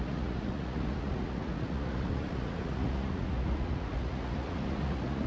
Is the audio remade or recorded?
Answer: remade